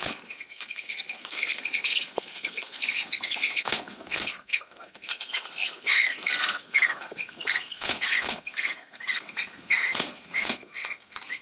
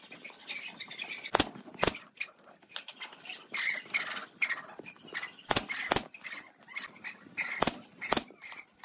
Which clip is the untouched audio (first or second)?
second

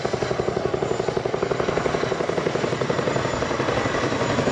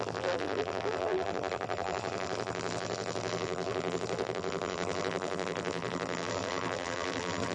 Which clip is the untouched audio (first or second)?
first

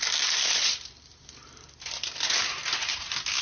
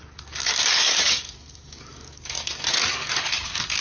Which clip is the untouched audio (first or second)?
first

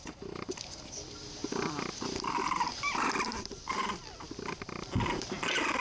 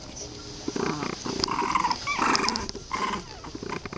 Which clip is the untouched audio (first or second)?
second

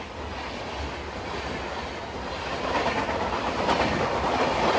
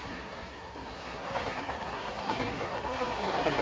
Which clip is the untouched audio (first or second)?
first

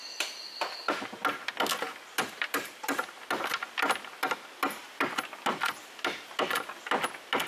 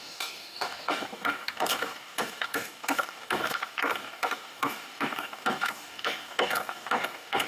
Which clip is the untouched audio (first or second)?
first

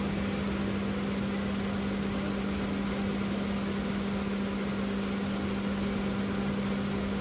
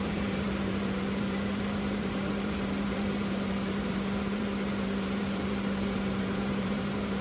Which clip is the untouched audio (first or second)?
first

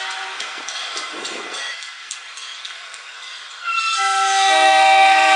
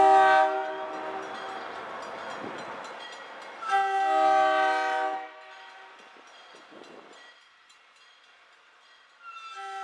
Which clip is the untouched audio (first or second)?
second